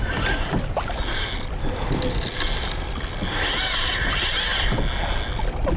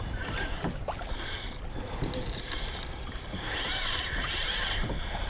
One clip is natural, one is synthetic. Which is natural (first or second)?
first